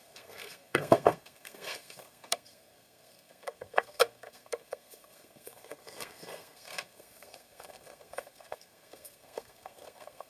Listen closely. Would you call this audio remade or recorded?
remade